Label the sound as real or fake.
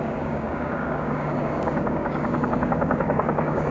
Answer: fake